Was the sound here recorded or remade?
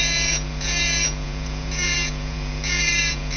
remade